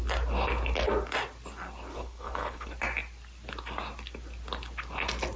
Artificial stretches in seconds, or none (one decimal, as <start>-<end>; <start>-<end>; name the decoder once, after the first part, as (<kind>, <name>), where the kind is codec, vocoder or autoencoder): 1.9-2.7 (codec, HILCodec)